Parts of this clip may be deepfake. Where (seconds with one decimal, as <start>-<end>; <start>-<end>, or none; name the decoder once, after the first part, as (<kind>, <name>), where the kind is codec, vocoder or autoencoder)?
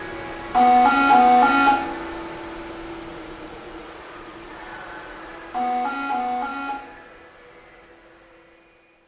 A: 3.1-5.3 (vocoder, Vocos)